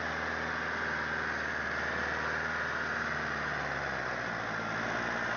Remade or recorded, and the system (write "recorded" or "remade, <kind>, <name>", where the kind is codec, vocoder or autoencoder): recorded